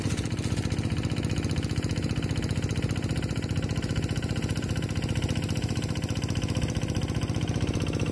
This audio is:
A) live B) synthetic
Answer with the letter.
A